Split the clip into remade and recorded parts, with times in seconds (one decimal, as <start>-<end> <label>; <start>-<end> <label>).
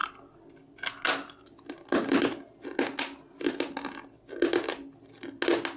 0.0-5.8 recorded